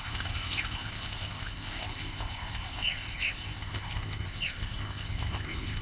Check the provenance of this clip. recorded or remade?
remade